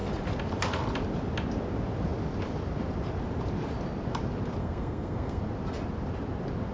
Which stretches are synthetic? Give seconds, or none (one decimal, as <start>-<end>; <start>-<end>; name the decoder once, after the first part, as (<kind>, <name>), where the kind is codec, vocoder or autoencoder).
4.6-5.4 (codec, SNAC)